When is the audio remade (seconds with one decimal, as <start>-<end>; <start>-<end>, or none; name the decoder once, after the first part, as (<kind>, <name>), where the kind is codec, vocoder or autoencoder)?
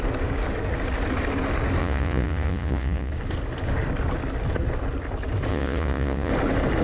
1.8-3.1 (vocoder, Vocos); 5.5-6.3